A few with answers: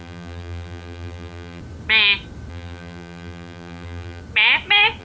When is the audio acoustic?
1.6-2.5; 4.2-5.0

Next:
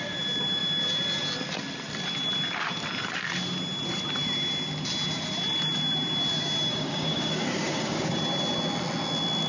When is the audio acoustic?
0.0-6.7; 8.1-9.5

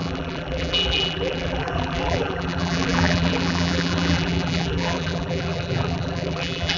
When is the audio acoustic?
none

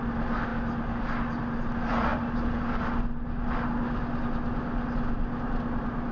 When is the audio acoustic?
0.0-6.1

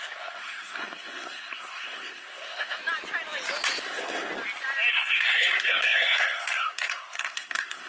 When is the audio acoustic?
2.8-3.8; 4.3-4.9

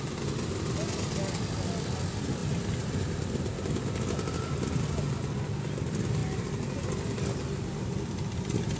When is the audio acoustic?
0.0-8.8

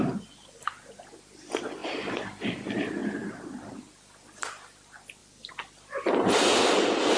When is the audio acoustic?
0.0-1.8; 2.4-3.0; 3.8-5.2; 6.5-7.2

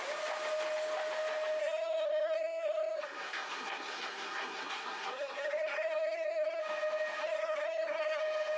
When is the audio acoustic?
0.0-1.6; 6.6-7.2; 8.2-8.6